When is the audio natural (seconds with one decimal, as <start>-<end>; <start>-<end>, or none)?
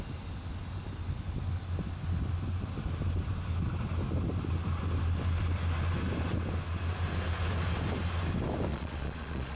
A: 0.0-8.7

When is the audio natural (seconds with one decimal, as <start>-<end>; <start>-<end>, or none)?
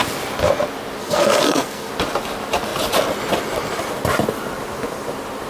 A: 0.0-1.0; 1.9-5.5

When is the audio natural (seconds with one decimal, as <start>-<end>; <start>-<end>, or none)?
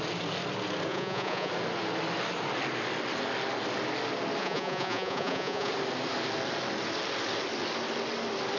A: 0.0-0.9; 1.5-4.4; 5.7-8.6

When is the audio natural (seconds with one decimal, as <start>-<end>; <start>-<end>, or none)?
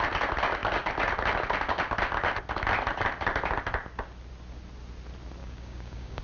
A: 0.0-5.4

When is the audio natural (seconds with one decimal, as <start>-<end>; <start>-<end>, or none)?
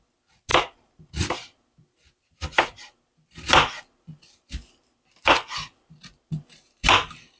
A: 0.0-0.5; 1.0-7.4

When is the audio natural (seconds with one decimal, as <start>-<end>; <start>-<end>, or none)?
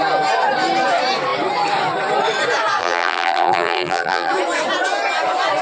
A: 0.0-2.8; 4.3-5.6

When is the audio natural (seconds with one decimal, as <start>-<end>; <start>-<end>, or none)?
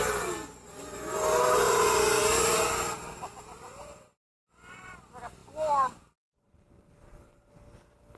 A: 0.0-2.2; 4.2-5.4; 7.5-8.2